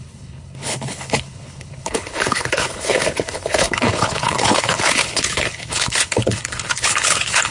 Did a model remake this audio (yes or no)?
yes